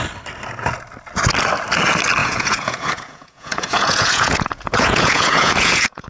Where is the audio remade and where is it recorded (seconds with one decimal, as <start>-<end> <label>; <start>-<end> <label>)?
0.0-2.2 recorded; 2.2-6.1 remade